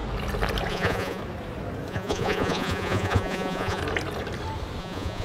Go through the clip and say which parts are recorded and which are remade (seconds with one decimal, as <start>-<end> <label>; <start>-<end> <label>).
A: 0.0-0.7 recorded; 0.7-1.2 remade; 1.2-1.9 recorded; 1.9-3.8 remade; 3.8-4.8 recorded; 4.8-5.2 remade